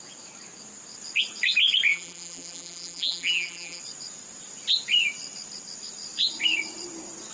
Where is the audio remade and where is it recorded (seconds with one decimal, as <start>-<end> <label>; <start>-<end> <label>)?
0.0-1.9 recorded; 1.9-3.8 remade; 3.8-7.3 recorded

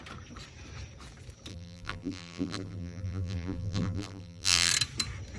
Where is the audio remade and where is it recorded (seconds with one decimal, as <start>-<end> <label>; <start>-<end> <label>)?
0.0-1.5 recorded; 1.5-4.7 remade; 4.7-5.4 recorded

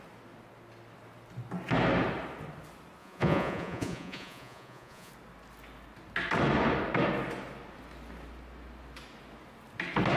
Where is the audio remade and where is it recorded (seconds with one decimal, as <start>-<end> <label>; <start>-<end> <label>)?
0.0-3.0 recorded; 3.0-5.1 remade; 5.1-10.2 recorded

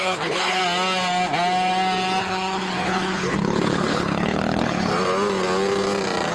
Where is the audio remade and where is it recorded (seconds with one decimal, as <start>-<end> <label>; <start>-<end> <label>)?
0.0-0.6 remade; 0.6-2.2 recorded; 2.2-4.9 remade; 4.9-6.3 recorded

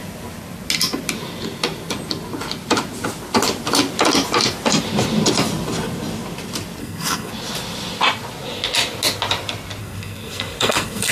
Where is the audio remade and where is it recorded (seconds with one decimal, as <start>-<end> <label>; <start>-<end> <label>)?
0.0-6.8 recorded; 6.8-7.3 remade; 7.3-9.8 recorded; 9.8-11.1 remade